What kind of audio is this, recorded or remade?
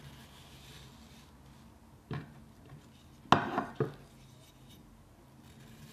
recorded